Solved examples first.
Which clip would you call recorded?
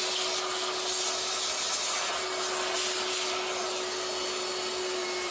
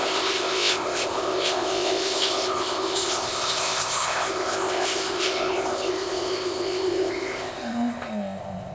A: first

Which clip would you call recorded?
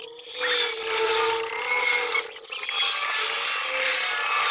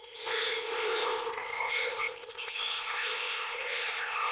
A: first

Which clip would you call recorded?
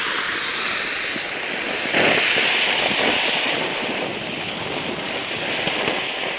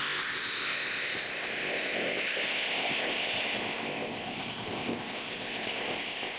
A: first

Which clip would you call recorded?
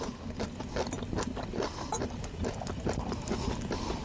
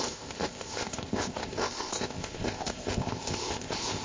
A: first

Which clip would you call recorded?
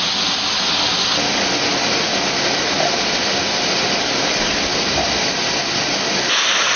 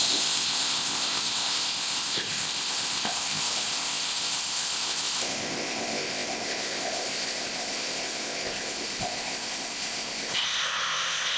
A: first